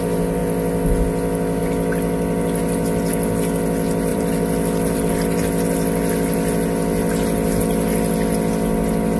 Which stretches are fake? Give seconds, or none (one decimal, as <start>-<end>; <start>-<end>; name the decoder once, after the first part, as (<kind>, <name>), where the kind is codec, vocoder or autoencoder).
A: 4.1-5.0 (vocoder, BigVGAN v2)